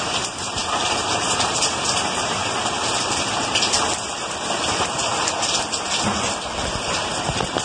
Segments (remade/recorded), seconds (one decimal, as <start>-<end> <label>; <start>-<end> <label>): 0.0-0.6 remade; 0.6-1.2 recorded; 1.2-2.4 remade; 2.4-6.9 recorded; 6.9-7.6 remade